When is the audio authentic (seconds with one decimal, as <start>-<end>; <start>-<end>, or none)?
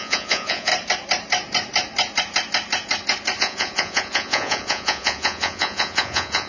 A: 0.7-3.4